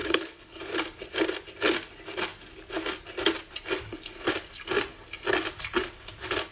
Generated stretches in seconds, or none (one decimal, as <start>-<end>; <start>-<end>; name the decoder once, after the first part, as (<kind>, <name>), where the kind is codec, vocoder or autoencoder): 0.0-0.6 (codec, HILCodec)